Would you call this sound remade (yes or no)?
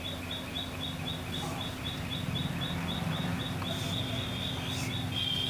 no